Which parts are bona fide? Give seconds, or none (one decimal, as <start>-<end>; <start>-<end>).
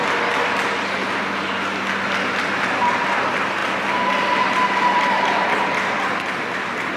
0.0-7.0